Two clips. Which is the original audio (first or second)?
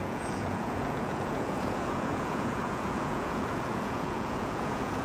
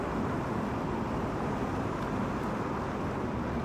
second